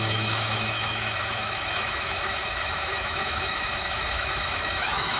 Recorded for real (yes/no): no